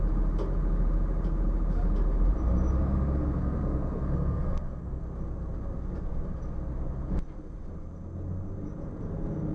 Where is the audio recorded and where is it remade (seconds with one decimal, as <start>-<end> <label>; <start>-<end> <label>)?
0.0-3.4 recorded; 3.4-5.0 remade; 5.0-9.5 recorded